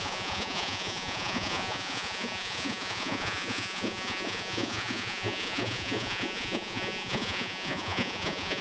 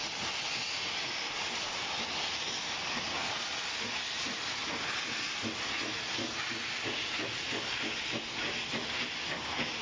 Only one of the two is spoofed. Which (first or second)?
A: first